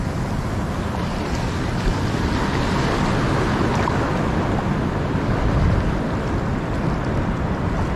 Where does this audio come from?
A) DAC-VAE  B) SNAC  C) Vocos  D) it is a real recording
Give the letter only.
D